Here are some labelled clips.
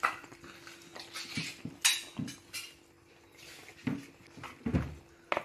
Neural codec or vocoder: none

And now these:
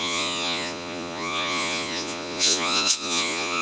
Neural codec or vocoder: vocoder, Vocos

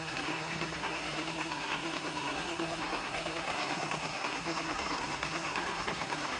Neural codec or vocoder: codec, SNAC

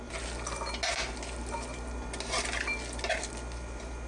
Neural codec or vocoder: none